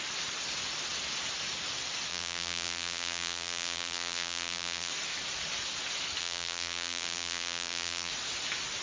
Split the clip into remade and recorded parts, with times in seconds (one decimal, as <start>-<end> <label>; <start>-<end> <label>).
0.0-2.1 recorded; 2.1-4.9 remade; 4.9-6.2 recorded; 6.2-8.1 remade; 8.1-8.8 recorded